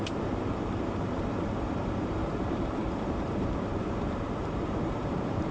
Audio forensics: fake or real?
fake